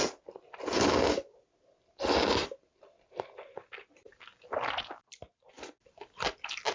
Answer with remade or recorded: recorded